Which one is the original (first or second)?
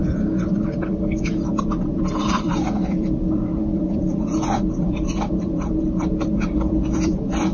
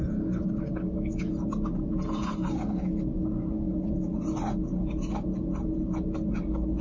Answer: second